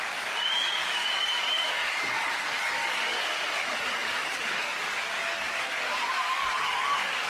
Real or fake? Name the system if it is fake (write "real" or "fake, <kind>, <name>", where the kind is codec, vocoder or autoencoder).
fake, codec, DAC